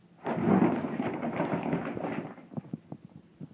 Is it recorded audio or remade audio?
recorded